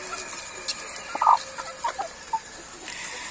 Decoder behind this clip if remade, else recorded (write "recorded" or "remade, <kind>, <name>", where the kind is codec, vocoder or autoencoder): recorded